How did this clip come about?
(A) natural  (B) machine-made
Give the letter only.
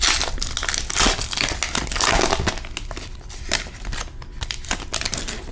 A